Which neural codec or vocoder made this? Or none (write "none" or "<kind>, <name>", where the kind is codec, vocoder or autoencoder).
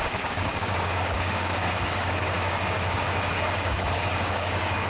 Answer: codec, DAC